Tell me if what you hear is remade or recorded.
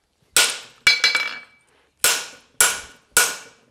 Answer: recorded